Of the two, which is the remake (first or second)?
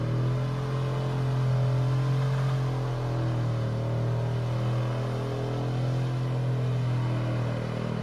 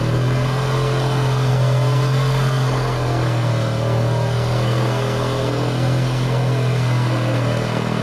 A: second